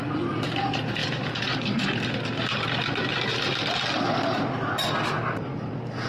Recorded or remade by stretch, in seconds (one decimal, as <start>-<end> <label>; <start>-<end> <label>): 0.0-1.0 recorded; 1.0-1.8 remade; 1.8-6.1 recorded

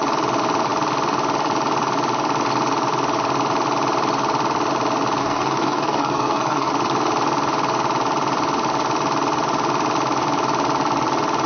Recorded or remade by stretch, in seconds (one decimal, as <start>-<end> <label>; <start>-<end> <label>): 0.0-5.2 recorded; 5.2-6.7 remade; 6.7-11.5 recorded

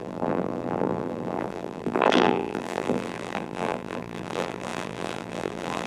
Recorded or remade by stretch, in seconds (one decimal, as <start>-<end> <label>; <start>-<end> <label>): 0.0-5.9 remade

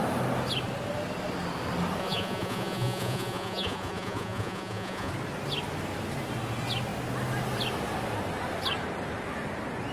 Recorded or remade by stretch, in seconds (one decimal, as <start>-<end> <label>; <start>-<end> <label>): 0.0-2.0 recorded; 2.0-5.1 remade; 5.1-9.9 recorded